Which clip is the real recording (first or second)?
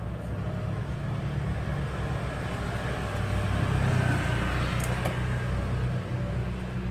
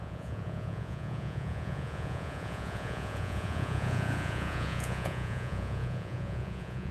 first